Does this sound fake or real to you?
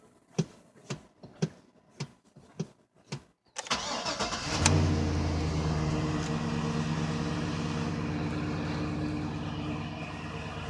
real